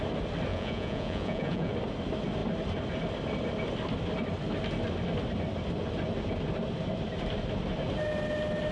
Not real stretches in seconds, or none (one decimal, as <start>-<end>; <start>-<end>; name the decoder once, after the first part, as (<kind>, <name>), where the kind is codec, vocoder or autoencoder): 0.5-1.7 (vocoder, Vocos)

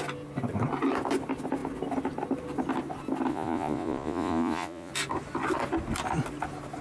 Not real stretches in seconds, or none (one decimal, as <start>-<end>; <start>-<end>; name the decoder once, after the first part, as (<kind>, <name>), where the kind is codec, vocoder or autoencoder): 3.3-4.9 (vocoder, Vocos)

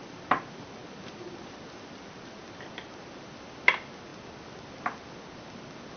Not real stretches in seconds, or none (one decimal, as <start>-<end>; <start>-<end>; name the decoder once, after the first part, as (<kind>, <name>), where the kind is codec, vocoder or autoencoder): none

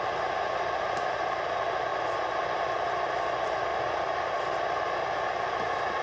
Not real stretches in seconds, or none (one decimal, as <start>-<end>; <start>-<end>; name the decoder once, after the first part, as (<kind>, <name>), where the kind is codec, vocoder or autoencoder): none

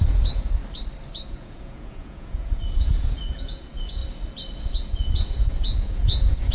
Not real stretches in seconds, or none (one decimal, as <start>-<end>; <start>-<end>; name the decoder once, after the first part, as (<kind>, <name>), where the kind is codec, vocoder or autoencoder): 0.0-0.6 (vocoder, Vocos); 1.3-4.0; 4.6-6.5

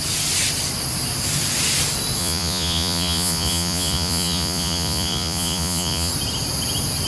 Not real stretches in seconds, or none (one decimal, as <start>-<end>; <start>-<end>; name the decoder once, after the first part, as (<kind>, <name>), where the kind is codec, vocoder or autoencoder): 2.2-6.1 (vocoder, Vocos)